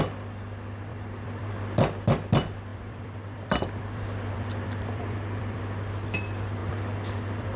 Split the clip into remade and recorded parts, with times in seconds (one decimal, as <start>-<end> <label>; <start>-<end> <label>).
0.0-0.9 recorded; 0.9-1.5 remade; 1.5-2.7 recorded; 2.7-5.6 remade; 5.6-6.6 recorded; 6.6-7.6 remade